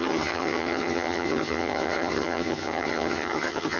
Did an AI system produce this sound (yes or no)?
yes